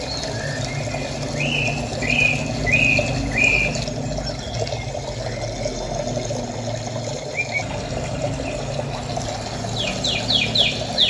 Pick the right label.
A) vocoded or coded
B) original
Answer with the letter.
B